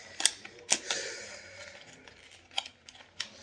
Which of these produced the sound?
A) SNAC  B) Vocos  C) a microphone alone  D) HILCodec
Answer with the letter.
C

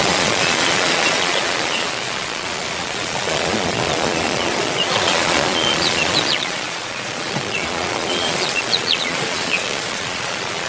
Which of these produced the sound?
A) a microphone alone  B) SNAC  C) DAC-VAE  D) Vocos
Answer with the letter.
D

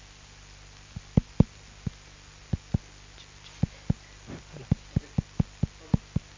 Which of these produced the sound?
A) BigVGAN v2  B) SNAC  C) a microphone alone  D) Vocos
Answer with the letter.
C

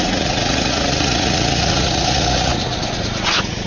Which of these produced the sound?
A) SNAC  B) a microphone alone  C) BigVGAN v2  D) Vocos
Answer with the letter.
D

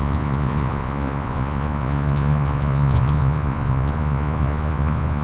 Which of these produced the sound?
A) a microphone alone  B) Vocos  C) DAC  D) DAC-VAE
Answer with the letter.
B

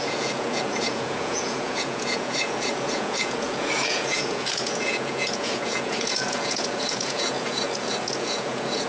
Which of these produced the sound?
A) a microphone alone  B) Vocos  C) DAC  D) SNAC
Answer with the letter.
B